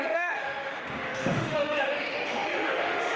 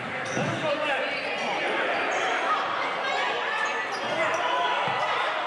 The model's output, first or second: first